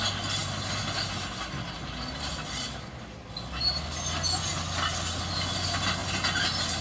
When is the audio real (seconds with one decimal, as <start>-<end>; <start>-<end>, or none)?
0.0-6.8